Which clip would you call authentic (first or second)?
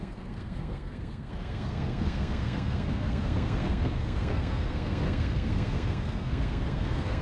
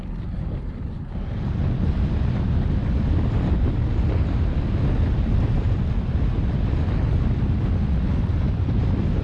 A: second